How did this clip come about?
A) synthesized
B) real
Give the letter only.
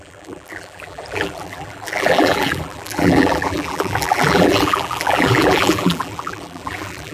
A